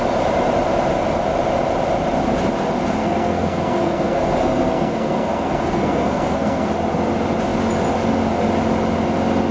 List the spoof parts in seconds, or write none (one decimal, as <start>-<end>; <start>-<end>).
3.0-6.7